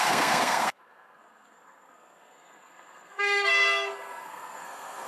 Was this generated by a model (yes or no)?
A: yes